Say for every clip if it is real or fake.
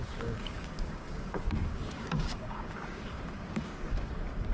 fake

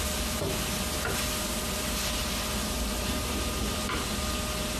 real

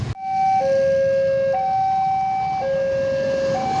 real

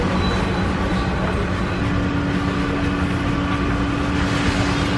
real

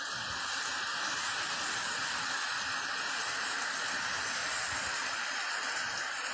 fake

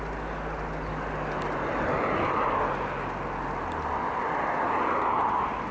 real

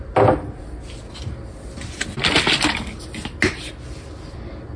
real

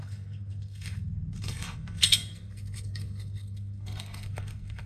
fake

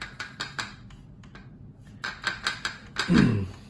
real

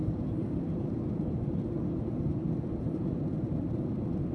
real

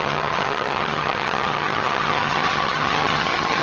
fake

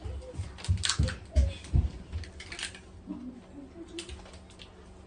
real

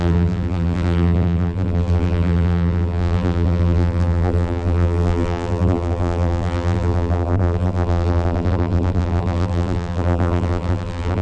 fake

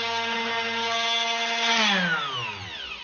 real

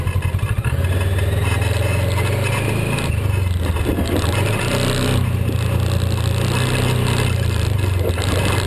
real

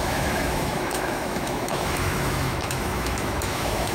fake